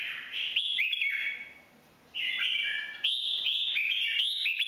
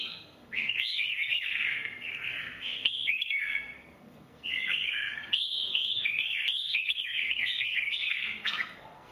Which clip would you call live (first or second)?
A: first